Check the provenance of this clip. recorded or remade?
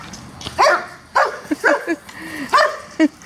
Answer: recorded